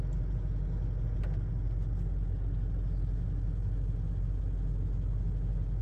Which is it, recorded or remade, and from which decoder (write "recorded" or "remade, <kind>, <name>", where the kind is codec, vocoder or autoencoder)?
recorded